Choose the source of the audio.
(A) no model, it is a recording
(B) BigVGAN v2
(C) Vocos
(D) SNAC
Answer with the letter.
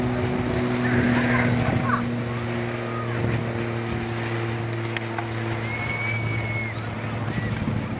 A